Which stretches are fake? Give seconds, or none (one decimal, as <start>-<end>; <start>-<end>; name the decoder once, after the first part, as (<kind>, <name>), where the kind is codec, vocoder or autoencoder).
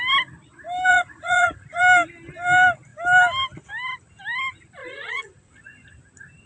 0.9-1.8 (vocoder, Vocos); 4.8-5.6